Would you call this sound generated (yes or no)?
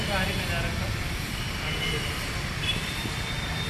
no